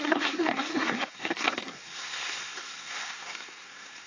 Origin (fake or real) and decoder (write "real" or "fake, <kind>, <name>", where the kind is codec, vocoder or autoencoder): fake, codec, SNAC